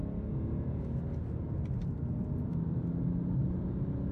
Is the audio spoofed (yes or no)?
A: no